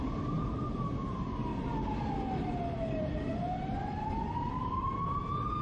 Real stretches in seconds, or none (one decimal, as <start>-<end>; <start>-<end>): 1.5-4.3